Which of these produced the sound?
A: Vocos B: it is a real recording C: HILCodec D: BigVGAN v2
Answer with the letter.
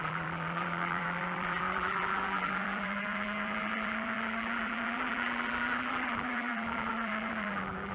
D